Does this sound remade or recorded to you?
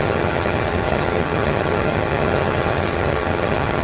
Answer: remade